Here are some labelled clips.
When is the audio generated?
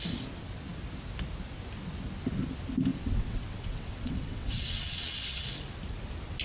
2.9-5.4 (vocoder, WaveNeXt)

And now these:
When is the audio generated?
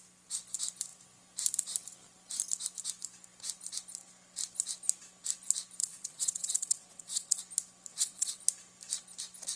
5.8-7.4 (vocoder, WaveNeXt); 7.9-8.4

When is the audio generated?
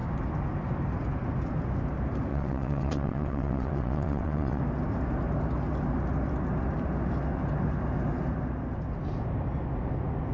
2.3-4.6 (vocoder, WaveNeXt)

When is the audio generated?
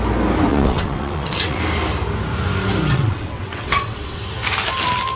0.5-1.6 (vocoder, WaveNeXt); 2.9-4.2